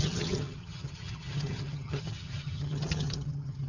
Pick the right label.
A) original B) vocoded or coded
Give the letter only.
B